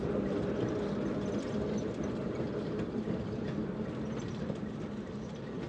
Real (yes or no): no